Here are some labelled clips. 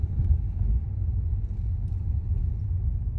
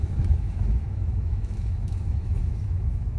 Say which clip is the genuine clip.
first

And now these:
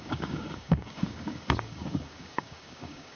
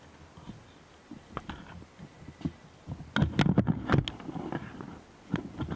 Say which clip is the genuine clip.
second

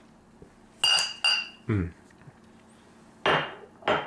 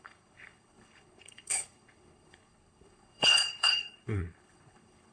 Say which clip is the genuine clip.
first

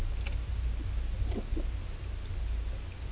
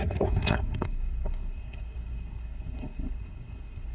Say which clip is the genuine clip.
first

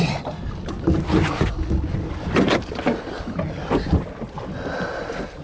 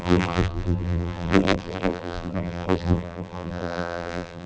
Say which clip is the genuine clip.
first